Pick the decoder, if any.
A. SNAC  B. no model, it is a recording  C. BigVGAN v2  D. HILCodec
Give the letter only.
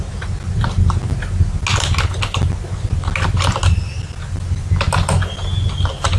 B